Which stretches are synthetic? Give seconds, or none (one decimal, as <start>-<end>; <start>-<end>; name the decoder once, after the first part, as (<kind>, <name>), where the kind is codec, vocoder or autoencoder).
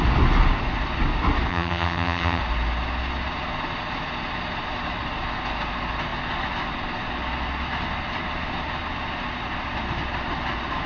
1.5-2.4 (vocoder, HiFi-GAN)